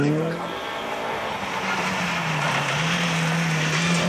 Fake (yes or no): no